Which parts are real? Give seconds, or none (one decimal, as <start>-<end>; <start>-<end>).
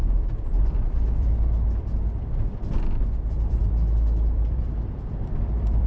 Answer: none